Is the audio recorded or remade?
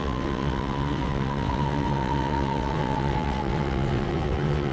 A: remade